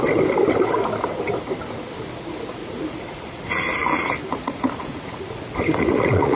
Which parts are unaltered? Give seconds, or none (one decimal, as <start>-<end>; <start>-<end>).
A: 0.0-2.6